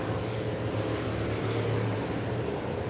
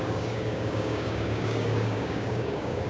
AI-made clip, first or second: second